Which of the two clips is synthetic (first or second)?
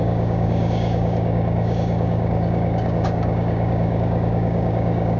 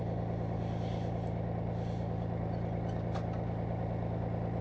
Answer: first